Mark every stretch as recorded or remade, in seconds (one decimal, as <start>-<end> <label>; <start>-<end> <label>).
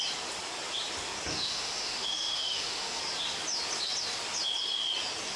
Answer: 0.0-1.3 recorded; 1.3-3.0 remade; 3.0-5.4 recorded